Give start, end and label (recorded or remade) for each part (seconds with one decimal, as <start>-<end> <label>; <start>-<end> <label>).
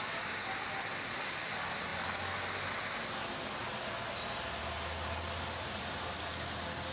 0.0-6.9 recorded